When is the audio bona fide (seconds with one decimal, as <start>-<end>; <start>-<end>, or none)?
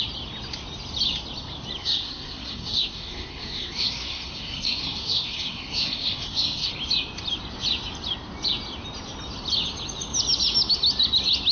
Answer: 0.0-1.8; 6.7-11.5